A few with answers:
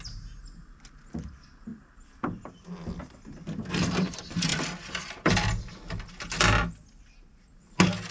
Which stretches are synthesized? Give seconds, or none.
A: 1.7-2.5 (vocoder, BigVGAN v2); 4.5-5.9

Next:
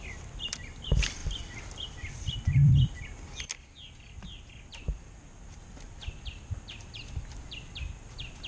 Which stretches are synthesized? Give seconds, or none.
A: none

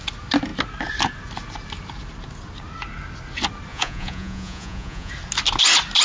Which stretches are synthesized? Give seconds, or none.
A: 3.7-5.1 (vocoder, Vocos)

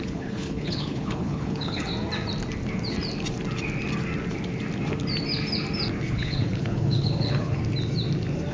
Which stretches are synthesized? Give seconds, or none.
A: 0.0-1.9 (codec, HILCodec); 6.1-7.6